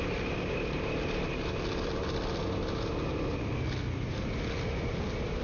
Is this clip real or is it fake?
real